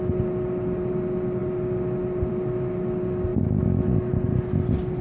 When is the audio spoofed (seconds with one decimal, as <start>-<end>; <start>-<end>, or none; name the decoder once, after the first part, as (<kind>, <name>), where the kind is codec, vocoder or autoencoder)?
0.0-3.3 (vocoder, BigVGAN v2); 4.1-5.0